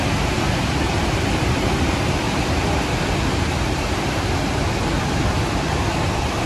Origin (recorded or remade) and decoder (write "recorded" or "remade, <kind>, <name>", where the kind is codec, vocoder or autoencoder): recorded